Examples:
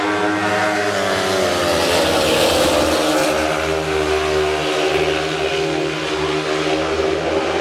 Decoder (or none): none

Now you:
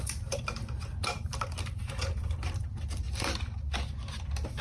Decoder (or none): vocoder, BigVGAN v2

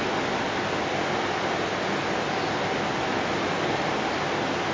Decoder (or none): none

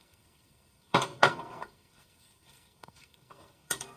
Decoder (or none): codec, SNAC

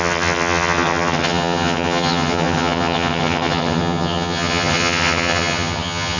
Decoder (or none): vocoder, HiFi-GAN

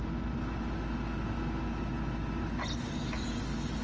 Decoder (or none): none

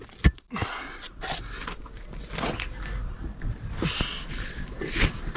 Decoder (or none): none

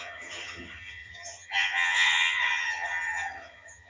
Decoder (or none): vocoder, HiFi-GAN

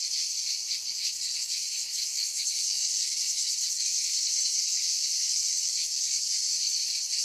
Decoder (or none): codec, SNAC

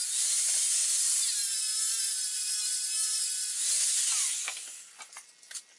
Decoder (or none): none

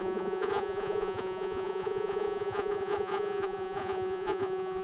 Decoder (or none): vocoder, Vocos